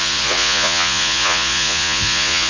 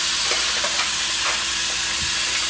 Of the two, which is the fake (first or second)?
first